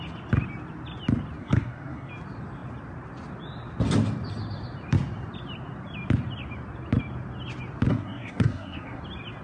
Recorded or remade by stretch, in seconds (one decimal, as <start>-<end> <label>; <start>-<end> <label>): 0.0-1.4 recorded; 1.4-2.1 remade; 2.1-7.9 recorded; 7.9-9.0 remade; 9.0-9.4 recorded